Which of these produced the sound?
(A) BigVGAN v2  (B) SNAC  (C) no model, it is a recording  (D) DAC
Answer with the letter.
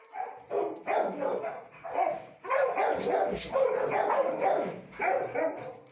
C